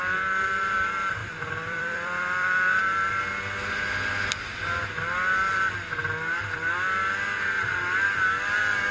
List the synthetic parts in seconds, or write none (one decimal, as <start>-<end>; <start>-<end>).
1.2-2.8